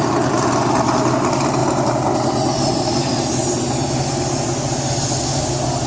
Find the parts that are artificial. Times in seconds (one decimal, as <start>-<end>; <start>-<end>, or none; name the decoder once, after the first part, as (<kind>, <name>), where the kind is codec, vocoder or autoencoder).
1.6-3.5 (vocoder, BigVGAN v2)